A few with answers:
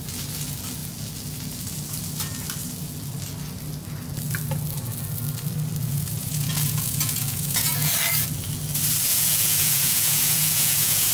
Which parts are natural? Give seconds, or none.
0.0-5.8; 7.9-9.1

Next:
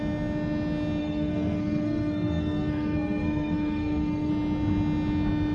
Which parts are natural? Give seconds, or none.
0.0-1.0; 4.3-5.5

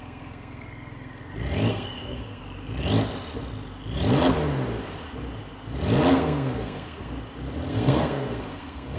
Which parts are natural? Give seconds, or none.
1.2-1.7; 2.4-6.1; 7.1-7.7